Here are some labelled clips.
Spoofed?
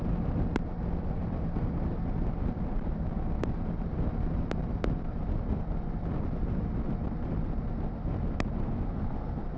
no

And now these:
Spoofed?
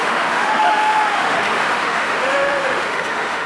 yes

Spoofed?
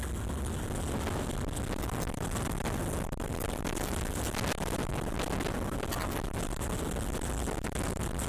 no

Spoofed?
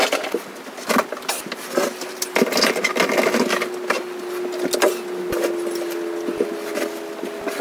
no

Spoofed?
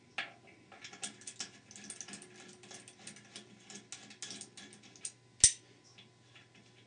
no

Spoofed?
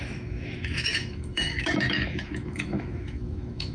yes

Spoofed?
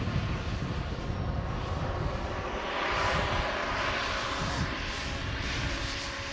no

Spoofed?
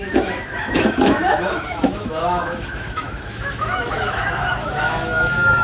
yes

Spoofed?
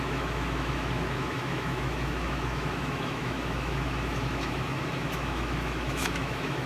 yes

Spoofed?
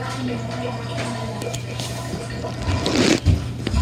no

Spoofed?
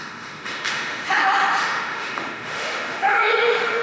yes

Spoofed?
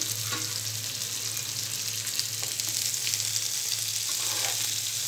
no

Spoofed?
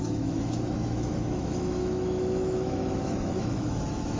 yes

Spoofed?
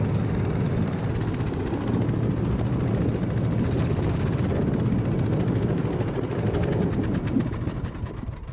no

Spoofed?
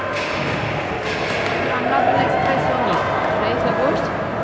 no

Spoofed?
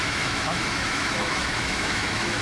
yes